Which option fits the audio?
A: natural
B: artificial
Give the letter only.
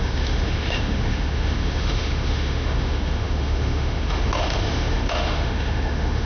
B